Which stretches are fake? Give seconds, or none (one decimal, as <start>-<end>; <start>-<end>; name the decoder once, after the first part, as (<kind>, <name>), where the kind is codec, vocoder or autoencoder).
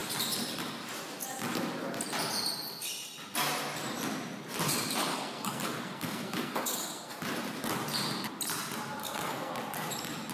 5.1-7.2 (codec, SNAC); 9.0-9.5